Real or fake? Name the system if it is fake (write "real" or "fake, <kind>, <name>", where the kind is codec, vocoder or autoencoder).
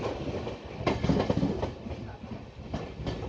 real